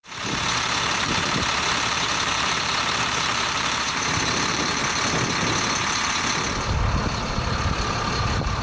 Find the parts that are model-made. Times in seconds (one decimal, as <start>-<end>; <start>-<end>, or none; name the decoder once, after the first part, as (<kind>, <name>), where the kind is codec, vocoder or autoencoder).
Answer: 0.0-4.8 (vocoder, BigVGAN v2); 7.3-8.6